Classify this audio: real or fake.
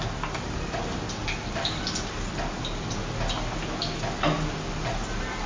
real